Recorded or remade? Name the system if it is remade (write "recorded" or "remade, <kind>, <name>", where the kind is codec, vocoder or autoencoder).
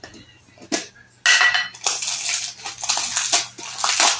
recorded